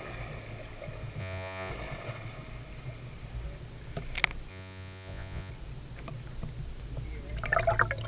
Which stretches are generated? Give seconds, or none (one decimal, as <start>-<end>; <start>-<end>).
1.2-1.7; 4.5-5.5